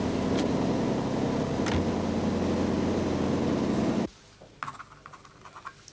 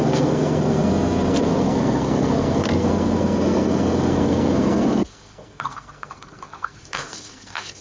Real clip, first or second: first